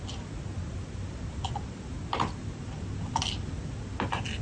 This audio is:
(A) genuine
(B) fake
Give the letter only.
A